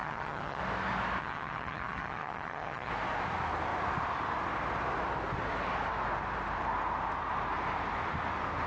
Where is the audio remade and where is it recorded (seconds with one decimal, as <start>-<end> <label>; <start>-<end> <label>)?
0.0-0.6 remade; 0.6-1.2 recorded; 1.2-2.9 remade; 2.9-8.7 recorded